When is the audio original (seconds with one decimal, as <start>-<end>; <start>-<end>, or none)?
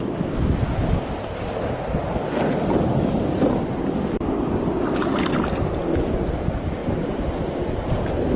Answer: 0.0-8.4